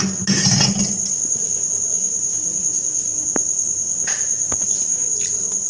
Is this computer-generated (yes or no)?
no